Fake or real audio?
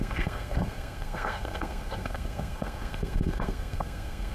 fake